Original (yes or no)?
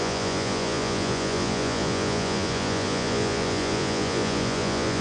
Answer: no